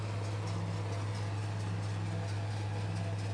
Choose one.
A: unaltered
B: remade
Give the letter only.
A